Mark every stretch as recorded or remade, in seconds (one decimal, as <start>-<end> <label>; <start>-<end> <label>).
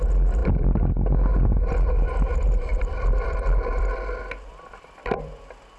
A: 0.0-2.7 recorded; 2.7-5.8 remade